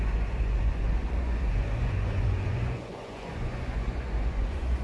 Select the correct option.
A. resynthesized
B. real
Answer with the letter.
A